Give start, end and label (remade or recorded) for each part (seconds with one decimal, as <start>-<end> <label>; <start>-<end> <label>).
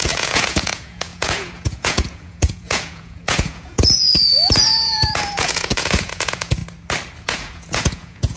0.0-6.6 remade; 6.6-7.2 recorded; 7.2-8.4 remade